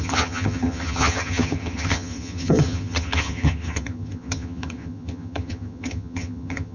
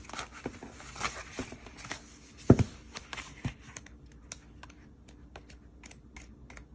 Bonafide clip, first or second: second